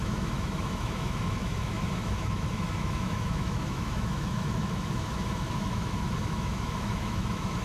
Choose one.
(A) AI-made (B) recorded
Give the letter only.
A